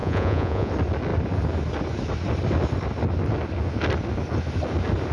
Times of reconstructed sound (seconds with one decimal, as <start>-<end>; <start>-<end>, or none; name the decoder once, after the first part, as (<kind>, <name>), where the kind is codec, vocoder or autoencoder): 0.0-0.7 (vocoder, Vocos)